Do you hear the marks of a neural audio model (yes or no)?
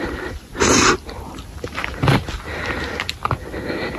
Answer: no